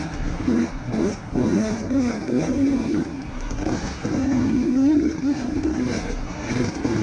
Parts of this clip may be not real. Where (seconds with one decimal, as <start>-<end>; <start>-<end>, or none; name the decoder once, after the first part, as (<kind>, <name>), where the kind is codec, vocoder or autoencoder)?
0.0-7.0 (codec, SNAC)